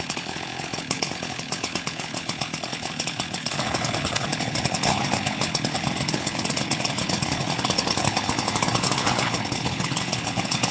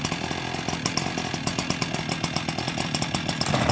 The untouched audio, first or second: second